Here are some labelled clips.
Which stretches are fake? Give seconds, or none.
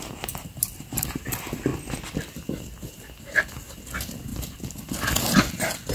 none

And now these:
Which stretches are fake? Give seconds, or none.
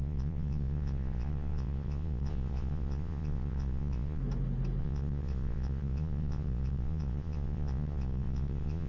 0.0-4.2 (vocoder, Vocos); 4.8-8.9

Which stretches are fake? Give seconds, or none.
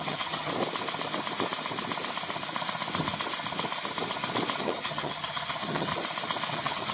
0.0-0.5 (vocoder, HiFi-GAN); 4.6-5.9; 6.5-6.9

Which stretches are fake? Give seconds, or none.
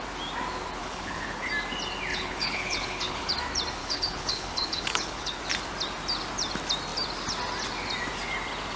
0.8-1.5 (codec, HILCodec); 2.1-3.3; 3.8-5.4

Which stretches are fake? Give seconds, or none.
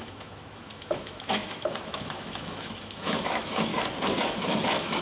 0.0-3.7 (autoencoder, DAC-VAE); 4.2-5.0